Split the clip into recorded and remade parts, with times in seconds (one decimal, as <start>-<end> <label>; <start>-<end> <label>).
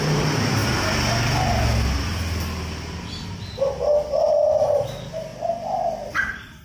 0.0-0.6 remade; 0.6-4.6 recorded; 4.6-5.3 remade; 5.3-6.1 recorded; 6.1-6.6 remade